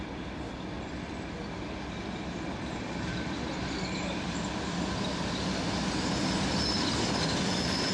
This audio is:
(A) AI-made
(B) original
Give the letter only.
B